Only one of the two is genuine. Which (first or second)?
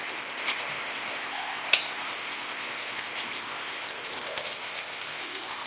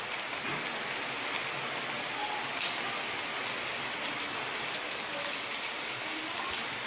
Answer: second